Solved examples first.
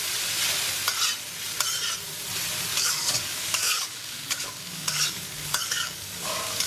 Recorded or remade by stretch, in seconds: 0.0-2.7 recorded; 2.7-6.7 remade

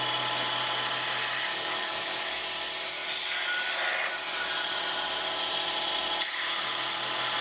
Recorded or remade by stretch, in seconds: 0.0-1.5 recorded; 1.5-2.4 remade; 2.4-7.4 recorded

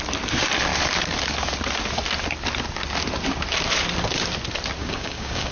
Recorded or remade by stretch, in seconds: 0.0-4.8 recorded; 4.8-5.5 remade